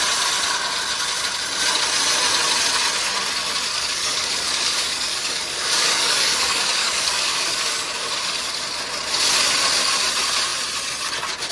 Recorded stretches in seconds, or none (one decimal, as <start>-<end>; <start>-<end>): 0.0-3.7; 8.1-11.5